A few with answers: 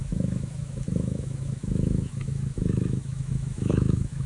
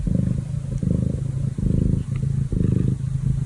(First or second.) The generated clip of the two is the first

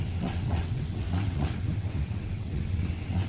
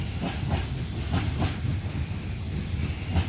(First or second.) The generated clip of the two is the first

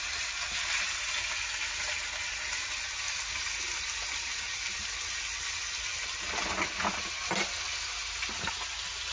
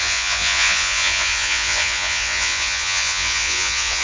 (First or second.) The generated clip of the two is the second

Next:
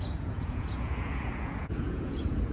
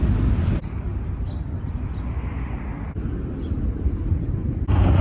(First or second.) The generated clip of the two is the first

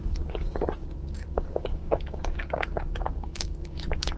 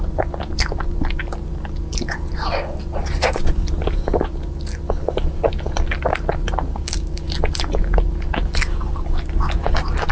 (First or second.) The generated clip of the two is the first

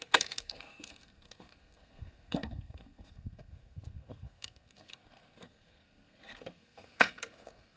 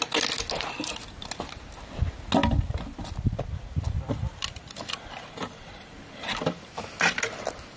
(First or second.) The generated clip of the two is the first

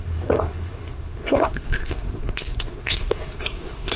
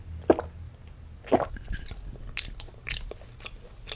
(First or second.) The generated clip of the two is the first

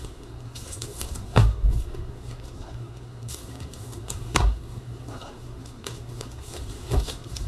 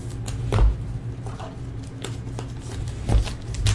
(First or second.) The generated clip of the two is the first